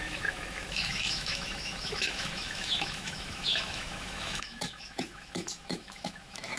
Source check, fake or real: fake